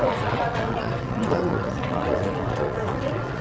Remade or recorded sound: remade